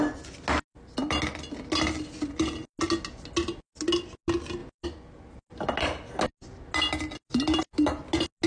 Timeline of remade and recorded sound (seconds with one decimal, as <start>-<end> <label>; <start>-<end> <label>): 0.0-8.5 recorded